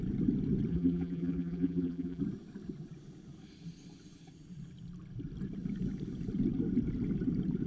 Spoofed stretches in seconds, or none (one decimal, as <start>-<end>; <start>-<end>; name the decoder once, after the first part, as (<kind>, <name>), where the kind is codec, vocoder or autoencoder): 0.7-2.2 (vocoder, BigVGAN v2)